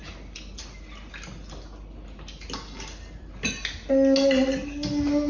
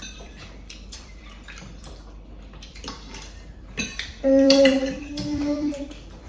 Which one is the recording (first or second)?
first